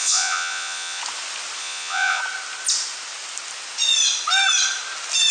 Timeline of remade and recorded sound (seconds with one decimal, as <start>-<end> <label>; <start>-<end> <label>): 0.0-1.0 remade; 1.0-1.6 recorded; 1.6-2.2 remade; 2.2-5.3 recorded